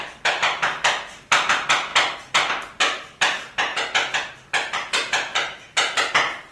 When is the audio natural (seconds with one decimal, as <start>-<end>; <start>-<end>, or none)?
1.9-2.5; 3.7-4.2